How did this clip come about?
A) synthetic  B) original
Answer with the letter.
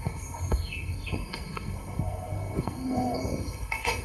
A